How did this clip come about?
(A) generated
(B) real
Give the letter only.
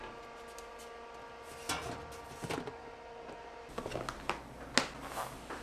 B